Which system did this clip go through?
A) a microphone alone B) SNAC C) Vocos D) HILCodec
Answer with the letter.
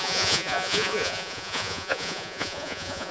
C